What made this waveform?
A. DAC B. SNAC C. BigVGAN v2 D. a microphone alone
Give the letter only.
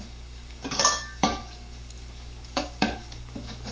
A